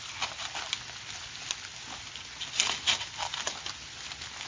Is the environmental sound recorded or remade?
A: recorded